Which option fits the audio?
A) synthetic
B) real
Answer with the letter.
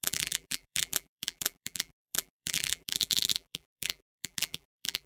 A